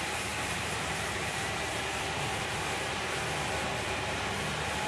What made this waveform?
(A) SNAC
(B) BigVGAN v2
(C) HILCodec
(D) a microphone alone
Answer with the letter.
B